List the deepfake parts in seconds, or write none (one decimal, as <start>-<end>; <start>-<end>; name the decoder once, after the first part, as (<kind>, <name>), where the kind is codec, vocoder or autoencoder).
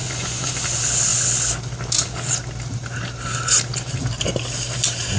0.0-0.6 (vocoder, Vocos)